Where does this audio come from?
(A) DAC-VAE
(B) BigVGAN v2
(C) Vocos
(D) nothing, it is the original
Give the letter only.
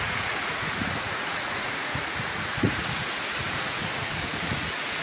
C